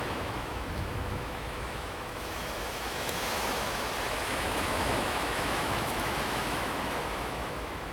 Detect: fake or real fake